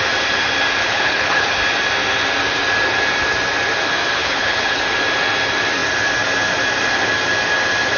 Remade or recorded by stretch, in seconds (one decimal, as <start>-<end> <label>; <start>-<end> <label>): 0.0-0.8 recorded; 0.8-1.5 remade; 1.5-4.2 recorded; 4.2-4.8 remade; 4.8-8.0 recorded